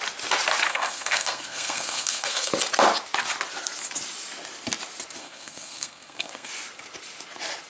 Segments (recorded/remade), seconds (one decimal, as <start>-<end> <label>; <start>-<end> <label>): 0.0-0.7 recorded; 0.7-2.5 remade; 2.5-5.2 recorded; 5.2-6.5 remade; 6.5-7.7 recorded